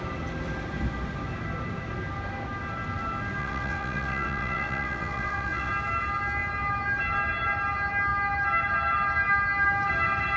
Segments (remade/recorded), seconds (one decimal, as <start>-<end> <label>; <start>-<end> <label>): 0.0-3.4 recorded; 3.4-5.7 remade; 5.7-10.4 recorded